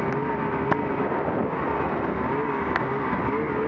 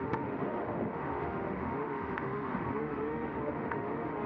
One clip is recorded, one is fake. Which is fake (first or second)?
second